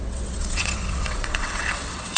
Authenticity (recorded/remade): remade